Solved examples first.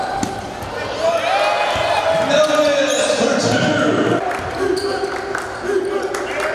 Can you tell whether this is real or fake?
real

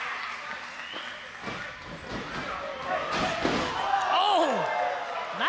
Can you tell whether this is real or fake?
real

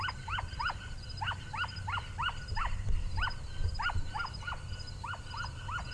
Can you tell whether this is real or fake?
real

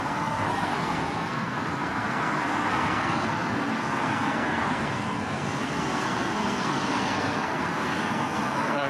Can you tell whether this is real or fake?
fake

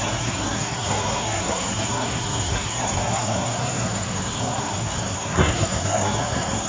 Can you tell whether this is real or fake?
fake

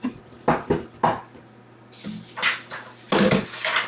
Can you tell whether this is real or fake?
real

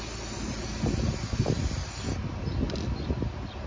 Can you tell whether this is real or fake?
real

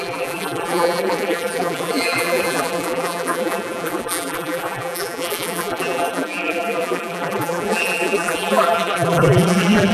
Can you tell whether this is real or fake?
fake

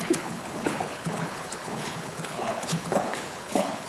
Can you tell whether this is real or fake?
fake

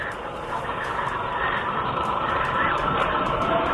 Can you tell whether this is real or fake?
real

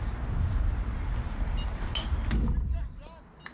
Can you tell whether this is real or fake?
real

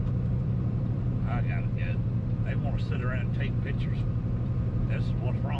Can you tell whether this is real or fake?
fake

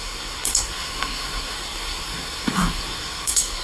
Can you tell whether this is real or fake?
fake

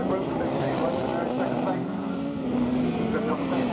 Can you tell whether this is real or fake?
real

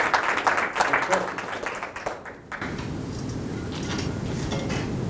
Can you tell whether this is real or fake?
real